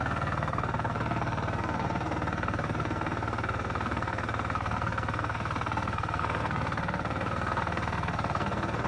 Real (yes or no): no